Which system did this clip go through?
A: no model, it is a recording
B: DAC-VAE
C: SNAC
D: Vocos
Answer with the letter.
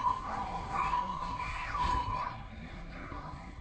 C